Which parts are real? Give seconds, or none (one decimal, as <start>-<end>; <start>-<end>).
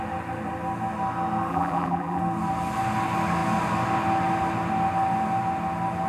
0.0-1.5; 2.2-6.1